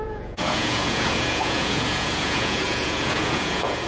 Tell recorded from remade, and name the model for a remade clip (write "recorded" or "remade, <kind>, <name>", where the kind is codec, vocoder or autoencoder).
remade, vocoder, Vocos